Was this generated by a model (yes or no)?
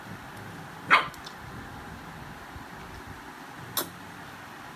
no